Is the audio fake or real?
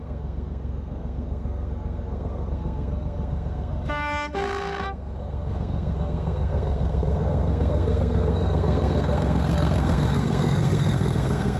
fake